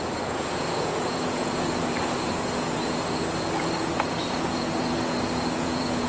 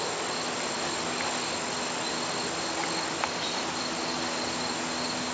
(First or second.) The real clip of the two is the second